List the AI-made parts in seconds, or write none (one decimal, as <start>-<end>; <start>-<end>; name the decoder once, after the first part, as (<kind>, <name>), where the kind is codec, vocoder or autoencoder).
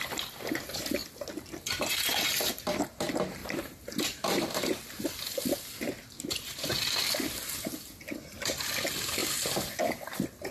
3.4-4.8 (vocoder, BigVGAN v2)